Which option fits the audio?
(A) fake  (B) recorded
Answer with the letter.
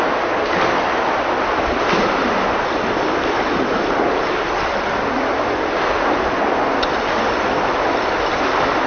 B